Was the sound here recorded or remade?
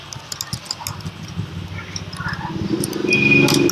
recorded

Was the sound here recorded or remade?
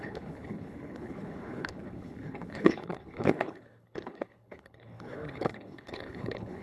remade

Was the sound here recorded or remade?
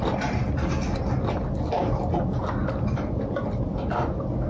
recorded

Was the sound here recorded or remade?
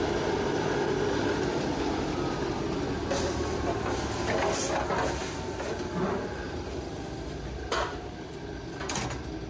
recorded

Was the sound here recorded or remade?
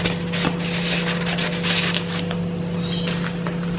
recorded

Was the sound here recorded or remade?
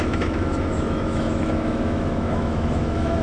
remade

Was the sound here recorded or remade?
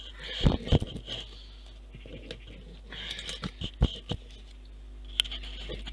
recorded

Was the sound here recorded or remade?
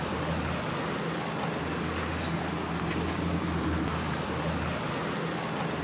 recorded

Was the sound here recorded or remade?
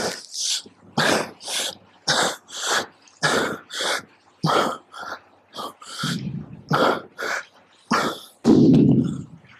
recorded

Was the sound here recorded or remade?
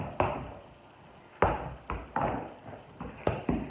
recorded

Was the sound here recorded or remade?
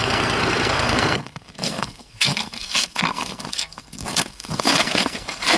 remade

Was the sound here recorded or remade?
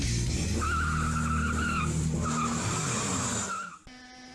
recorded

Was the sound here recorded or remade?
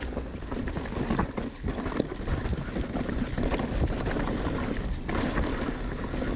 recorded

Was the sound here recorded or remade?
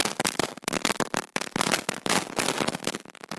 recorded